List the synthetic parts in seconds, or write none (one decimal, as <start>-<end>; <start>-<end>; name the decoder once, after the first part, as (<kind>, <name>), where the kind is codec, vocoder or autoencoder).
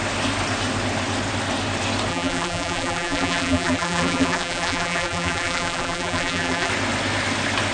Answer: 2.1-6.7 (vocoder, BigVGAN v2)